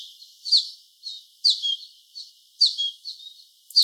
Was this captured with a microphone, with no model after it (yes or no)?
yes